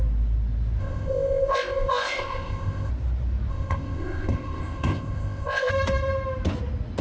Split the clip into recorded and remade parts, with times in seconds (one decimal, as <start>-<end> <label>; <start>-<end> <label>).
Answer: 0.0-0.8 recorded; 0.8-2.9 remade; 2.9-3.5 recorded; 3.5-5.7 remade; 5.7-7.0 recorded